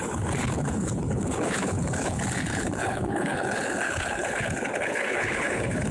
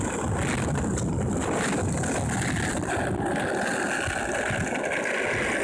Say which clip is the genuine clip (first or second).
second